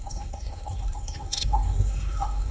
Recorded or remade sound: remade